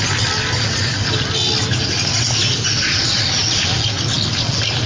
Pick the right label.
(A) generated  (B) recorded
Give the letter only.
B